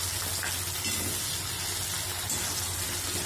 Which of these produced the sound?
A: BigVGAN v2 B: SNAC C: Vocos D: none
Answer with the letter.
D